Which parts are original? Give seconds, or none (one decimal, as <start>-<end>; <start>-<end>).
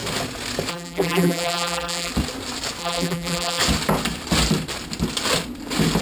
0.0-0.7; 2.1-2.8; 3.6-6.0